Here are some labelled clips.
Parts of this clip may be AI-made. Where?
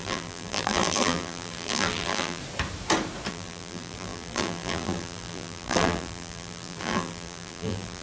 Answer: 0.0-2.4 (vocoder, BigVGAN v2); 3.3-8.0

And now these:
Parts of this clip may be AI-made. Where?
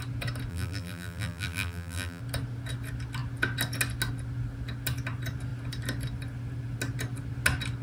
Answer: 0.5-2.2 (vocoder, BigVGAN v2)